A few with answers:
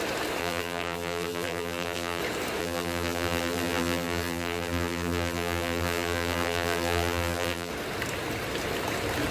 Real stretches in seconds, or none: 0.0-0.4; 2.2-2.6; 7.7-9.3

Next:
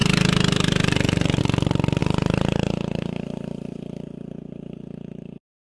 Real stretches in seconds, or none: 1.4-2.0

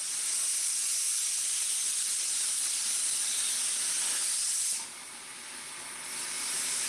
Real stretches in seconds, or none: 0.0-1.1; 2.8-6.4